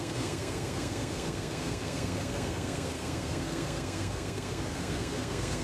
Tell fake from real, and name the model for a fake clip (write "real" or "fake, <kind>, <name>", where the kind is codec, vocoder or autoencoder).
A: fake, codec, SNAC